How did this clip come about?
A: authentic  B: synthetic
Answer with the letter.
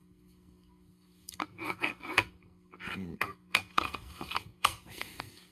B